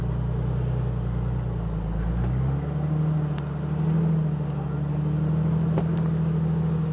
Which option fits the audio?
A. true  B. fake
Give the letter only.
A